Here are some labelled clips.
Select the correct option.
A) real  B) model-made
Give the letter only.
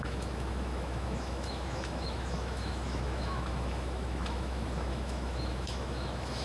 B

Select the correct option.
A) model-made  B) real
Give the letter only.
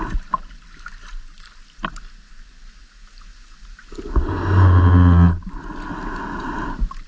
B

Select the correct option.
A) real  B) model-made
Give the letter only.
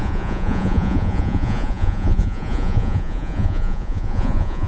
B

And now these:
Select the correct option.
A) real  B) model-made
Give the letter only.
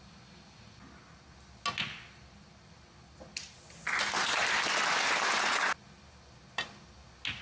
A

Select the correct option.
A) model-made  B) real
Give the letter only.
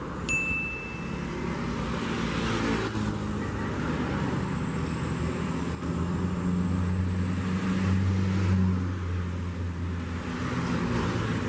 B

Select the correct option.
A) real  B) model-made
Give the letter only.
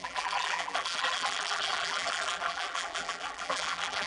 B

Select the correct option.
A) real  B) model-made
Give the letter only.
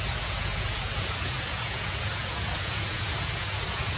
B